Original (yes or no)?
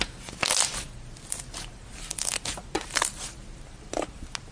yes